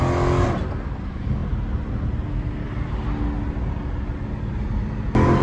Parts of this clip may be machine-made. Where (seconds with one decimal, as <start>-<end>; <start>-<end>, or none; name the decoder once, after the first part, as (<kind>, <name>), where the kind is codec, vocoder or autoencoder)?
none